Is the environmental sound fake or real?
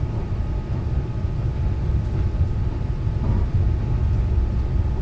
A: real